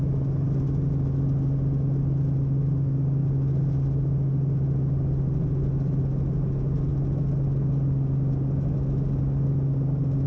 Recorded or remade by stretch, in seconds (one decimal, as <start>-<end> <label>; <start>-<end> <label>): 0.0-10.3 recorded